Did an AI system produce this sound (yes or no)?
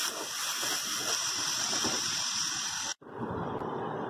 no